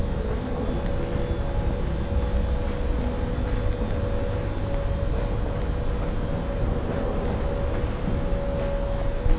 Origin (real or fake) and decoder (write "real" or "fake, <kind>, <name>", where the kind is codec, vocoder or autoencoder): real